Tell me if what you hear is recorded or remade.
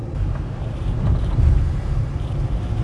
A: recorded